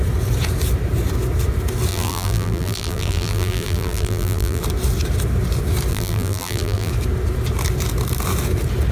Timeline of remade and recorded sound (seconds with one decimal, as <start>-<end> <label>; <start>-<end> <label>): 0.0-1.9 recorded; 1.9-4.6 remade; 4.6-5.9 recorded; 5.9-6.9 remade; 6.9-8.9 recorded